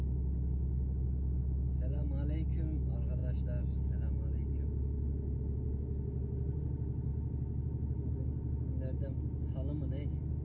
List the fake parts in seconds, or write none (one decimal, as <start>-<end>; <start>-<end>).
none